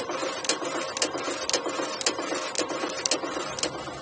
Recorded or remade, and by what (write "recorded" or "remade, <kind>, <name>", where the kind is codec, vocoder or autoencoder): recorded